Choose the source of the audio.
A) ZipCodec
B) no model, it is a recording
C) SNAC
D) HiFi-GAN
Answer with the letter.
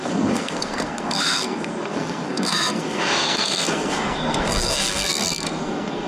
C